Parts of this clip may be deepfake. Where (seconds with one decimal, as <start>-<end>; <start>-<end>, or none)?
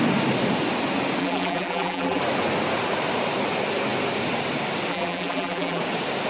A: 1.2-2.2; 4.9-5.8